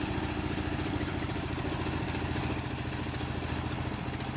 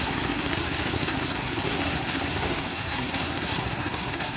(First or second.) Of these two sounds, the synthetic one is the second